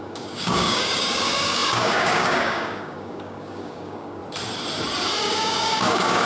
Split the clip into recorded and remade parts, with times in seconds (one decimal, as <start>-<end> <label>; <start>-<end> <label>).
0.0-4.2 remade; 4.2-5.2 recorded; 5.2-6.3 remade